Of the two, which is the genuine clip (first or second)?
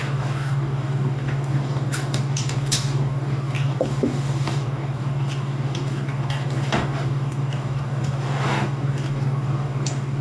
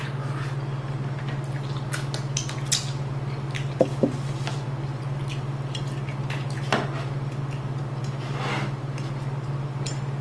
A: second